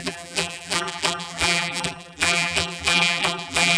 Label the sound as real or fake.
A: fake